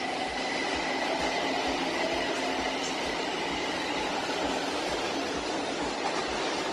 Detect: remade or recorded recorded